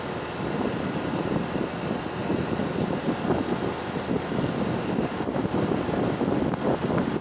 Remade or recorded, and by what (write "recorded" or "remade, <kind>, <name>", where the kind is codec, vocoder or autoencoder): recorded